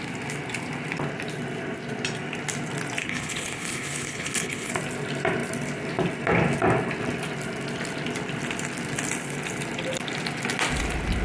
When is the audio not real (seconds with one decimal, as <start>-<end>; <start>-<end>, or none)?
3.0-4.7